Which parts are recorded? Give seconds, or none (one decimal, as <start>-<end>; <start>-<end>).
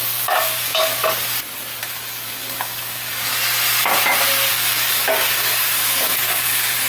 1.0-1.8; 3.3-4.5